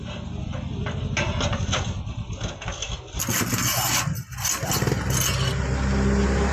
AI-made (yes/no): no